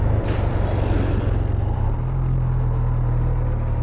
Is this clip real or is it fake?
real